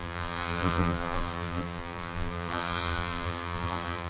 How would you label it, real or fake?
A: fake